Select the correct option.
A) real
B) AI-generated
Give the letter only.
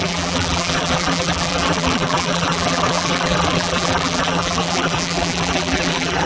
B